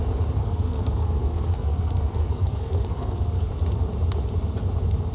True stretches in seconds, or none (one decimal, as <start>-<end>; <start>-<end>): 0.0-0.4; 3.5-5.1